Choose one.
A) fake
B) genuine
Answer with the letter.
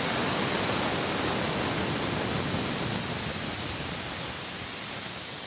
B